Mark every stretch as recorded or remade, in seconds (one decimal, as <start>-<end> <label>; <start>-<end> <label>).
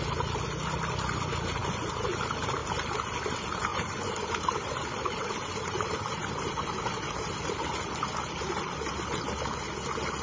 0.0-3.7 recorded; 3.7-8.9 remade; 8.9-10.2 recorded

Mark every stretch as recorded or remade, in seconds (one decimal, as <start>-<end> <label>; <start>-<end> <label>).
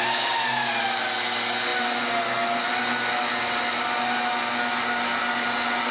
0.0-5.9 recorded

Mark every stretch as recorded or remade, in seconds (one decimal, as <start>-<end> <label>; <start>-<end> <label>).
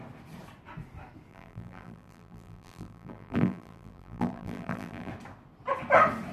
0.0-1.3 recorded; 1.3-5.1 remade; 5.1-6.3 recorded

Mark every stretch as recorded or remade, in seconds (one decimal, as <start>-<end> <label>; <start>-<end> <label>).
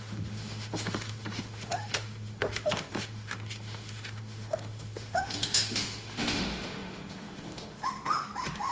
0.0-8.7 remade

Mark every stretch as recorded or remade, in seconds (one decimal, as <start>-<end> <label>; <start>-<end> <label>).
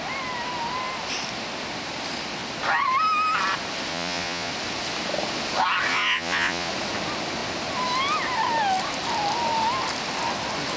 0.0-3.9 recorded; 3.9-4.5 remade; 4.5-5.9 recorded; 5.9-6.7 remade; 6.7-10.8 recorded